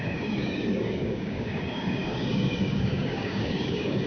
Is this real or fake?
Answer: fake